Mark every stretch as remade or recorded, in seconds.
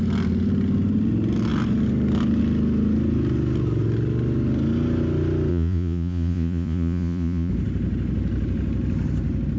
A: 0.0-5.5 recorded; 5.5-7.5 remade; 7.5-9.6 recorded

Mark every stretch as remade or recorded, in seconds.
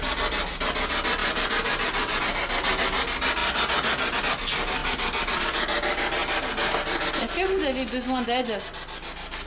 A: 0.0-9.5 recorded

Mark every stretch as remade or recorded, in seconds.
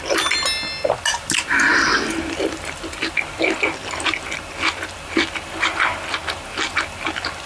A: 0.0-7.5 recorded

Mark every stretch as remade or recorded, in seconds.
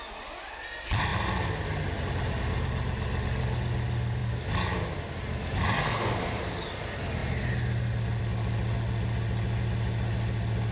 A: 0.0-10.7 recorded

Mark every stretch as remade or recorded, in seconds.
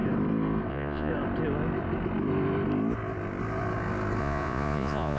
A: 0.0-0.7 recorded; 0.7-1.1 remade; 1.1-4.2 recorded; 4.2-5.2 remade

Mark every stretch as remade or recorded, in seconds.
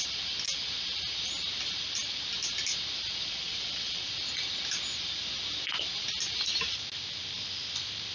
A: 0.0-3.3 recorded; 3.3-4.1 remade; 4.1-8.1 recorded